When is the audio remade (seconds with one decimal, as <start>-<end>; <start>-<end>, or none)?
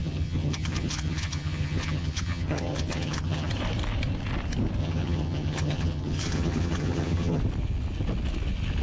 0.0-3.5; 4.8-7.4